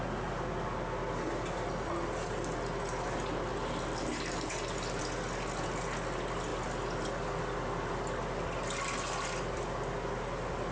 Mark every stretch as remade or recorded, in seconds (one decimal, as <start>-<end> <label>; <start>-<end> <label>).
0.0-10.7 recorded